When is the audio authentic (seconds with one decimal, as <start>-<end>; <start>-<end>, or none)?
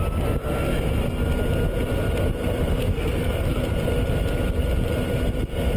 0.0-2.8; 3.6-5.8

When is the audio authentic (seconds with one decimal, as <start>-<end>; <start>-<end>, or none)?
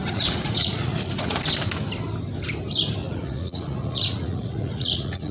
1.4-3.0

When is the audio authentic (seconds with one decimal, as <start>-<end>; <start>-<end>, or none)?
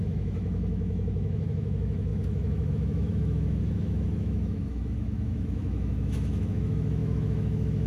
none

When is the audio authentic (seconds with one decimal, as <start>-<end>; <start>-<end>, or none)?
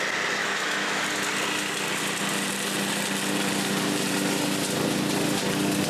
0.0-0.4; 1.0-5.9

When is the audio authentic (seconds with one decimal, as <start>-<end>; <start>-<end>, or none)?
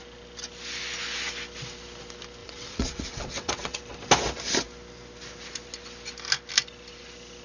0.0-2.4; 3.8-7.4